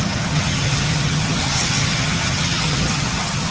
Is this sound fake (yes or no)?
yes